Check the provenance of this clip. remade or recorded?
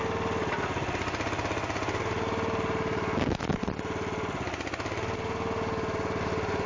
recorded